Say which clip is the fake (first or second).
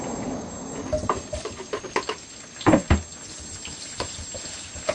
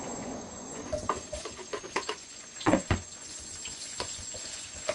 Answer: second